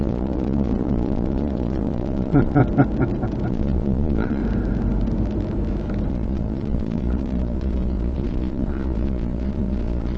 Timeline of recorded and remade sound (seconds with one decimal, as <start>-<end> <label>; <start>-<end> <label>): 0.0-2.6 remade; 2.6-3.5 recorded; 3.5-4.4 remade; 4.4-6.1 recorded; 6.1-10.2 remade